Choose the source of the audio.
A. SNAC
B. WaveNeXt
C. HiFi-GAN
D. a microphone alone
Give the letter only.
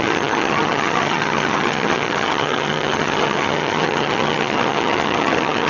C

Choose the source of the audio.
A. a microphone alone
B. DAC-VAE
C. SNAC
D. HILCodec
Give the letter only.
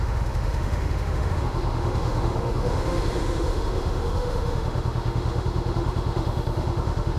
B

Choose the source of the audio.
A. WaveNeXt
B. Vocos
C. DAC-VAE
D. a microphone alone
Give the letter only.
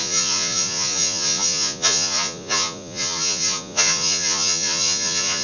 B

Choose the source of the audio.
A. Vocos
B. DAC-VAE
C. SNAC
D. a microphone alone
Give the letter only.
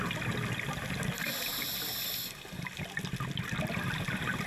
D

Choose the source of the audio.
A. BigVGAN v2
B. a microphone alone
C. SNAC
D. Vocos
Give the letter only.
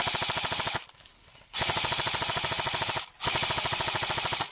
B